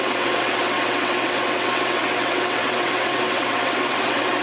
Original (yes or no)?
no